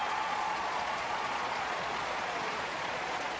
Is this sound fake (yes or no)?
yes